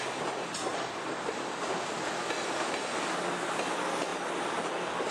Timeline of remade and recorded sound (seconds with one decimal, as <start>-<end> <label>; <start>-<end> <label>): 0.0-0.7 recorded; 0.7-2.9 remade; 2.9-4.1 recorded; 4.1-5.1 remade